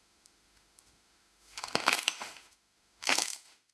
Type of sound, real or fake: fake